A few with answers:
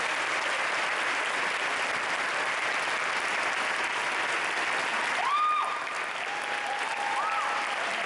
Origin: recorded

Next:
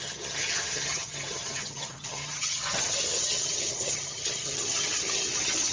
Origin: remade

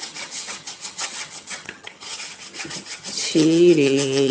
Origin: remade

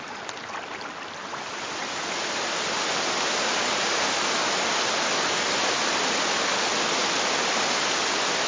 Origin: recorded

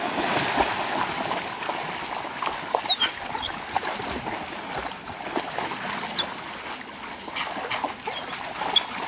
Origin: recorded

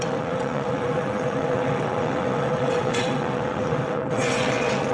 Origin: remade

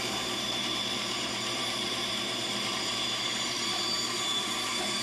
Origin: remade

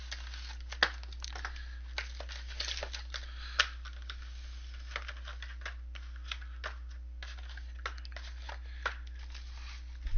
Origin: recorded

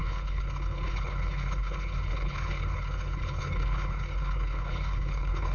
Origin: remade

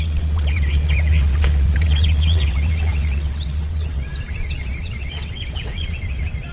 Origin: remade